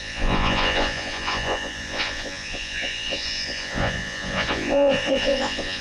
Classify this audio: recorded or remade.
remade